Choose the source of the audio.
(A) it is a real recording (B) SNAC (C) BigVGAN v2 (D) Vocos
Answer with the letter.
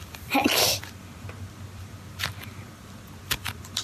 C